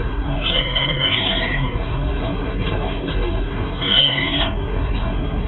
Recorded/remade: remade